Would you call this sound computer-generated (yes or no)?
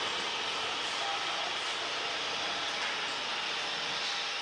no